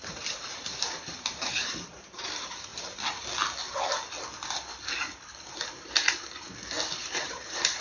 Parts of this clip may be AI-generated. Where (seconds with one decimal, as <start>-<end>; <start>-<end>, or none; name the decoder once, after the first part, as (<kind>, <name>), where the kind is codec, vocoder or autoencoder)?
0.0-2.7 (vocoder, BigVGAN v2); 7.0-7.8